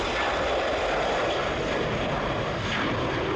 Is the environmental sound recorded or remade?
recorded